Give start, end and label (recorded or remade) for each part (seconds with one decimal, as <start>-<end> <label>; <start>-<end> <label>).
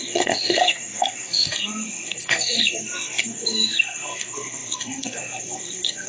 0.0-6.1 remade